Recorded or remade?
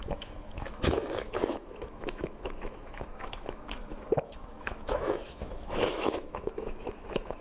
remade